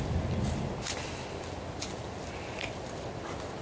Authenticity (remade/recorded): recorded